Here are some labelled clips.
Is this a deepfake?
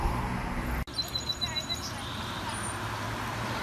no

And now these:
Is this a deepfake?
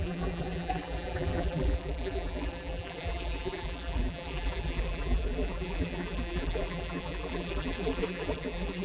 yes